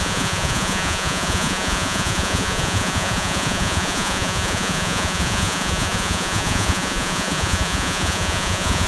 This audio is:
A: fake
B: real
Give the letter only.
A